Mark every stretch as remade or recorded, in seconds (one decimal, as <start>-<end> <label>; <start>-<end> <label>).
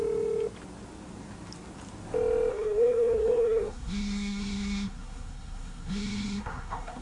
0.0-2.5 recorded; 2.5-7.0 remade